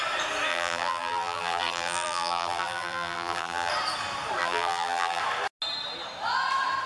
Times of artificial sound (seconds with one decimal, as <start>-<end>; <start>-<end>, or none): 0.5-3.7; 4.4-5.2